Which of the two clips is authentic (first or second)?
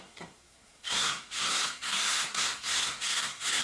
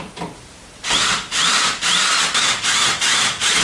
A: second